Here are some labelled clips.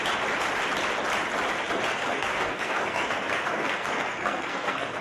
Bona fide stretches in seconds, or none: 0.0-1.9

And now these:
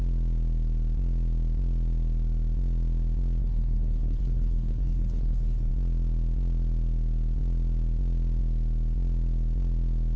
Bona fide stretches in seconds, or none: 0.0-3.4; 5.7-10.2

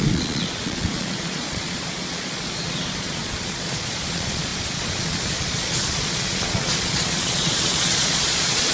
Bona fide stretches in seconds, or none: none

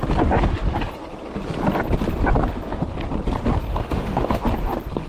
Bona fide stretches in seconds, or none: 0.0-3.7; 4.4-5.1

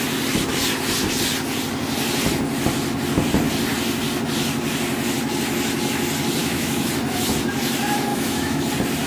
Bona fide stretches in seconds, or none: 0.0-6.4; 6.9-8.1; 8.6-9.1

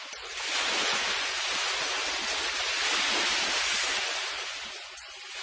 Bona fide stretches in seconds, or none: 2.0-3.9

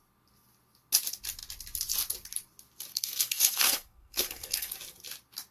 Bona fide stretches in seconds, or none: 0.0-2.9; 4.7-5.5

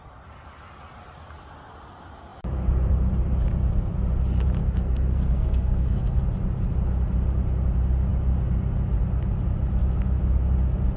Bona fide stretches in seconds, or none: 0.0-4.6; 6.2-11.0